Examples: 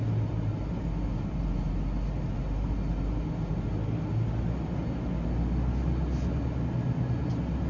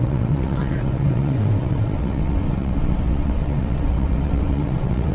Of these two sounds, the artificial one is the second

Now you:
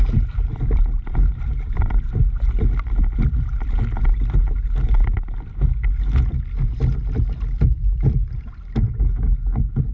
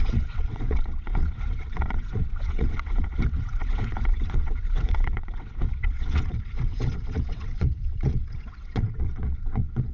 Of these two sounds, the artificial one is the second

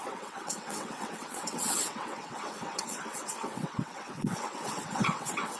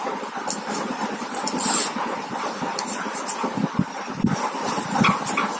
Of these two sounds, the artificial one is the first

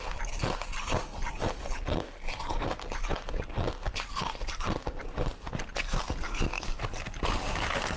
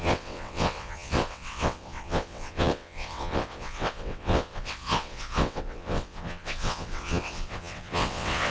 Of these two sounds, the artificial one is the second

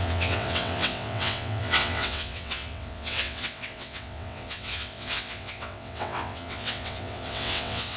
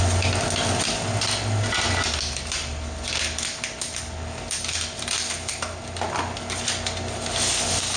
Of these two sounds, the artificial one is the first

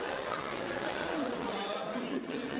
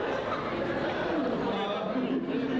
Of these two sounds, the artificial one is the first